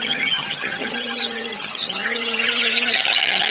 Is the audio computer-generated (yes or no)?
yes